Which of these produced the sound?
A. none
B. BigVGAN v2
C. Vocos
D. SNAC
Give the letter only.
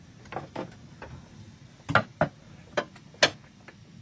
A